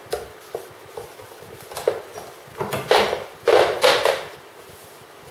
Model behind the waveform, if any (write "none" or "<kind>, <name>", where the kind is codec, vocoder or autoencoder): none